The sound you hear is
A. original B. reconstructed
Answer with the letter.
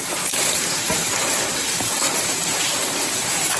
B